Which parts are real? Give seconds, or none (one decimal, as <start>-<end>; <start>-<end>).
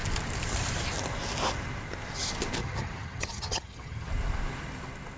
0.0-2.6; 4.1-5.2